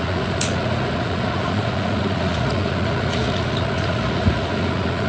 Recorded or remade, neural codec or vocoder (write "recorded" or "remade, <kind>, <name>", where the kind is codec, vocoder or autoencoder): remade, vocoder, Vocos